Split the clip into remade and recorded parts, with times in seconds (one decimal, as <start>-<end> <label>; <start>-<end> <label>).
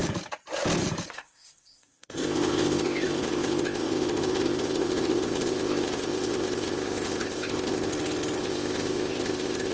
0.0-1.1 recorded; 1.1-7.9 remade; 7.9-8.4 recorded; 8.4-9.7 remade